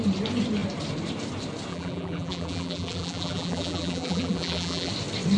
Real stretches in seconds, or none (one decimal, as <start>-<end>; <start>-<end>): 0.0-1.7; 4.9-5.4